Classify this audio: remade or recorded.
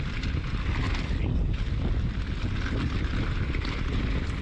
recorded